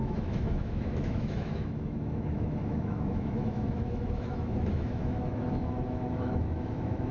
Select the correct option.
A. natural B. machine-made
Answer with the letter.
B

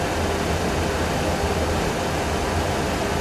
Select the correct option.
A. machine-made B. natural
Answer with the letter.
B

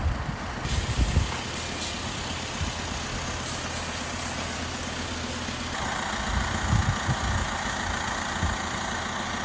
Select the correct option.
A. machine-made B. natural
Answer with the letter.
B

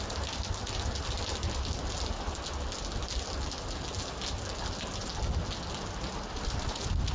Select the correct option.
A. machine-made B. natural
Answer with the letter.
B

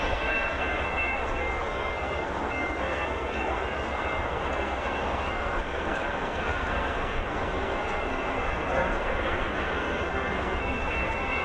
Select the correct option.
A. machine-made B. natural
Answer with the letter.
A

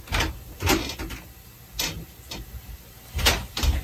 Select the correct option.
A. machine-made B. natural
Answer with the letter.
B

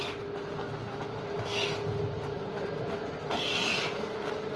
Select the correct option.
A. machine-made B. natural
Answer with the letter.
B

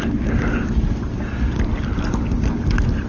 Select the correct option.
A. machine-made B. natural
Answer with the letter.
B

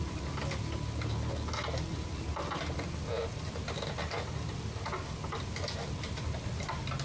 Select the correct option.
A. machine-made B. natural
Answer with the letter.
B